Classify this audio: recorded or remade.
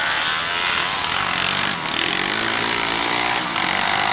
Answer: recorded